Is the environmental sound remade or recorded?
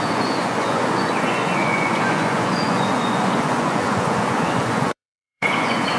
remade